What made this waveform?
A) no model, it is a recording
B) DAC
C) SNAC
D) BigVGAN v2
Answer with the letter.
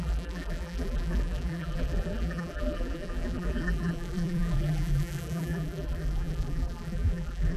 D